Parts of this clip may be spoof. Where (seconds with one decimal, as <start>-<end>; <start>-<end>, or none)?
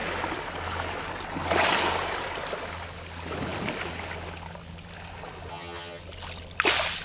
5.5-6.0